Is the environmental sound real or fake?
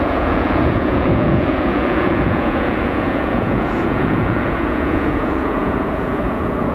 fake